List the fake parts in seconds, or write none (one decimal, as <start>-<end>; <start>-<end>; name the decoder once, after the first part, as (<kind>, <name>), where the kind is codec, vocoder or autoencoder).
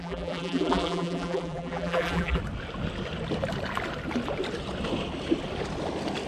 0.0-2.4 (vocoder, BigVGAN v2)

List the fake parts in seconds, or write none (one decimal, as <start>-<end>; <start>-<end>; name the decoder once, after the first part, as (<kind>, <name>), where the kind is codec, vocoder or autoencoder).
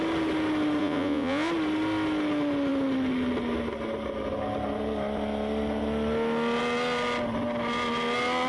0.8-1.5 (vocoder, Vocos)